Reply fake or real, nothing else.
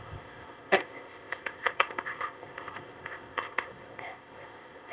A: fake